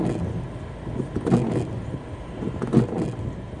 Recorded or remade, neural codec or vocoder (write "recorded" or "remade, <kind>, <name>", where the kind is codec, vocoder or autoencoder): recorded